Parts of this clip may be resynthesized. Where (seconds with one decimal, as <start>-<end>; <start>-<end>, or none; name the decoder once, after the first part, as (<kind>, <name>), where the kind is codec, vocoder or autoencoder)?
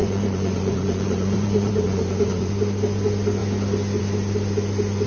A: 0.0-2.5 (vocoder, Vocos)